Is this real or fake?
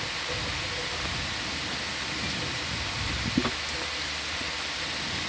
real